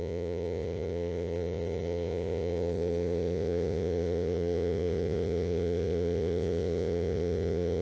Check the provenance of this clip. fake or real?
fake